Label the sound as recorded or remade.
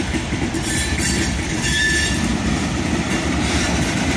remade